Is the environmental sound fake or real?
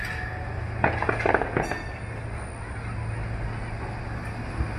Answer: real